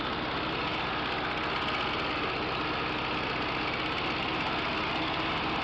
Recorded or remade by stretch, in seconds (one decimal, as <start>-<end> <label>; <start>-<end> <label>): 0.0-5.6 recorded